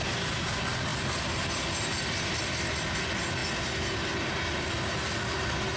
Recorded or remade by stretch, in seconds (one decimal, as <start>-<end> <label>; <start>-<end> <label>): 0.0-5.8 recorded